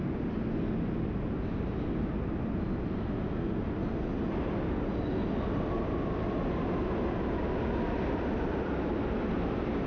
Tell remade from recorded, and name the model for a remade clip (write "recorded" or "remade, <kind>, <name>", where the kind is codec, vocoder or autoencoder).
recorded